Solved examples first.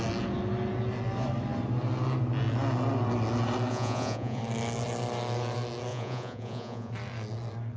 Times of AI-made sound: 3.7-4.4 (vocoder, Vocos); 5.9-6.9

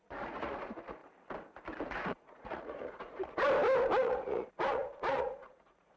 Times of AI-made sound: 0.0-1.0 (vocoder, Vocos); 1.9-3.4; 4.0-6.0

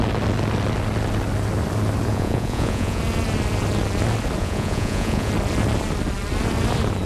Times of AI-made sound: 2.1-3.0 (vocoder, Vocos); 4.4-5.3

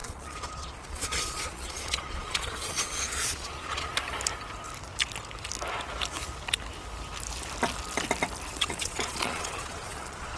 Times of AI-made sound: 0.0-3.9 (vocoder, Vocos); 8.6-10.4